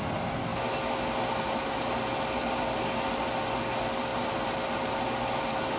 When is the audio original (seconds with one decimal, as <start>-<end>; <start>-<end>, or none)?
0.5-1.7

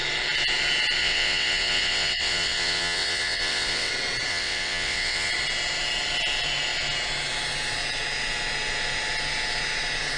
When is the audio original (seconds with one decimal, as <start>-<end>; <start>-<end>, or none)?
0.0-1.0; 3.9-4.3; 5.3-10.2

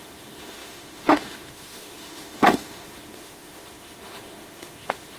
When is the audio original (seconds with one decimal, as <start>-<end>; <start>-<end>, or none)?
none

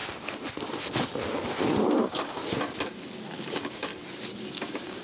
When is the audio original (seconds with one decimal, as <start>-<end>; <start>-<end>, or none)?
0.0-1.9; 2.4-3.3; 3.9-4.4

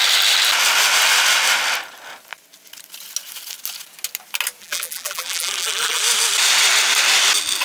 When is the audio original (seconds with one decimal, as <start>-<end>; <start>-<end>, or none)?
0.0-4.6; 6.0-7.6